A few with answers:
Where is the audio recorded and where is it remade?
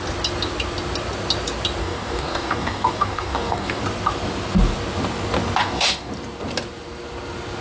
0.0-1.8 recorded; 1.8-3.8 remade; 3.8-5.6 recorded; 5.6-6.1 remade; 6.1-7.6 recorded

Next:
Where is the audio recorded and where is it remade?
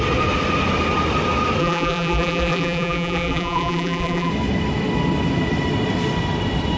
0.0-1.6 recorded; 1.6-4.3 remade; 4.3-6.8 recorded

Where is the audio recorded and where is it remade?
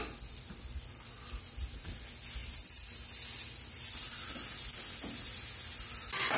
0.0-6.4 recorded